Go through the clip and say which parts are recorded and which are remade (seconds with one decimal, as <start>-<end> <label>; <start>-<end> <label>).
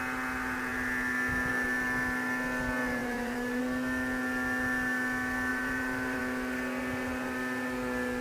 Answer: 0.0-3.0 recorded; 3.0-3.6 remade; 3.6-5.5 recorded; 5.5-6.2 remade; 6.2-8.2 recorded